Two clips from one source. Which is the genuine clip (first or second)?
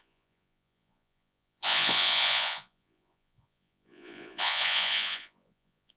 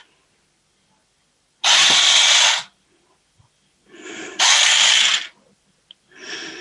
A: second